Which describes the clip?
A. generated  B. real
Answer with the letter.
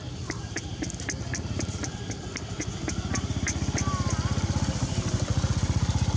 B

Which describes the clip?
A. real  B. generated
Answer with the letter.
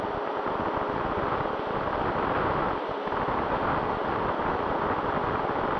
A